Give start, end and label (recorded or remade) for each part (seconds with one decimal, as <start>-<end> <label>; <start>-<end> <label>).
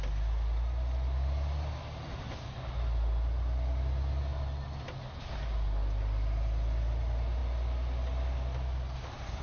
0.0-9.4 recorded